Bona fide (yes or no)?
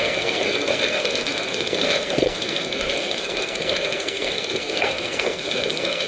no